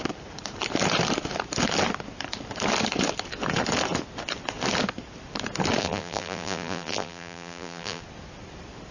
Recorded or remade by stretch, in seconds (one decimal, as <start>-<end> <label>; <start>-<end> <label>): 0.0-5.8 recorded; 5.8-8.0 remade; 8.0-8.9 recorded